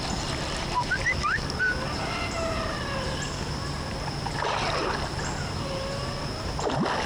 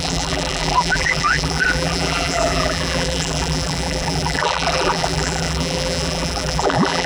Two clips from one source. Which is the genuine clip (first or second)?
first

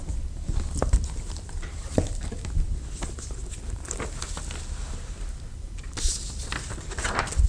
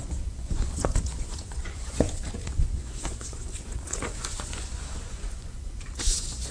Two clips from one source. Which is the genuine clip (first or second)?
first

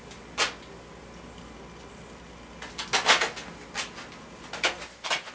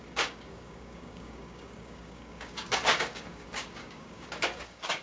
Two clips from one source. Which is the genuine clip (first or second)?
first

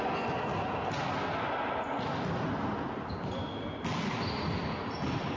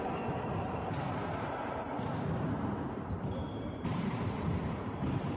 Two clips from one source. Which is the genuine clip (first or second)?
first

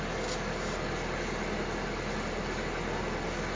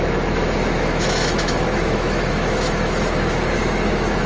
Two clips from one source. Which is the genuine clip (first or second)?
first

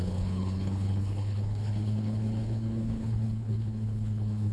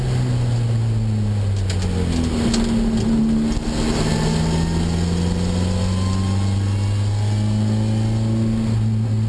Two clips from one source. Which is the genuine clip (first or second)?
second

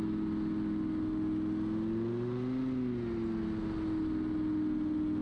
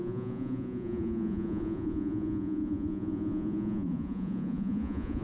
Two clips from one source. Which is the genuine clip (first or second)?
first